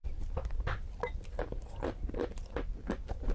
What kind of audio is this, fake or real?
real